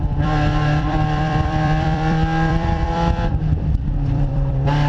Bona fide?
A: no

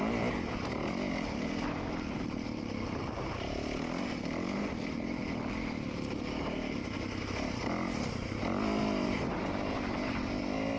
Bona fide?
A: yes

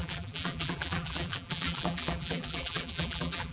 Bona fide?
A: no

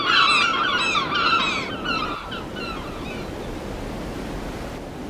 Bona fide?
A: yes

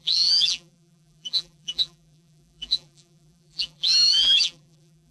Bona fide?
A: no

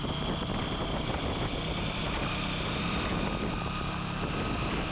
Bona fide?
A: yes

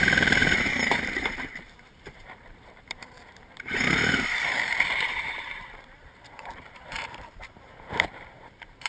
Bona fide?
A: no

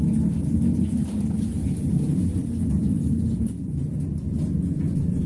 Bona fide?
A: no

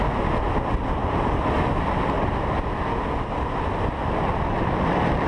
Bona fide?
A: yes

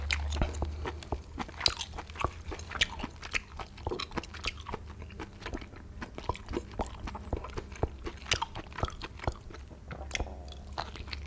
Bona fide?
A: yes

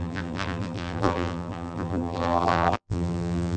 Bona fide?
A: no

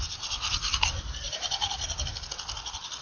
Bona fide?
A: yes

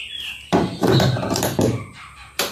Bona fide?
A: no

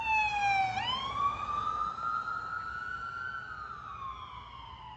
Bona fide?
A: yes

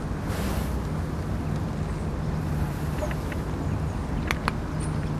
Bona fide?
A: yes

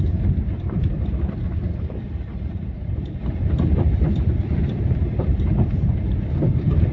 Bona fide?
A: no